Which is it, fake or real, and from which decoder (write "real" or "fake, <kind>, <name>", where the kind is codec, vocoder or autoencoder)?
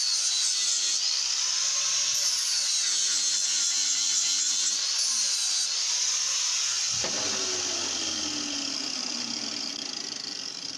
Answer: real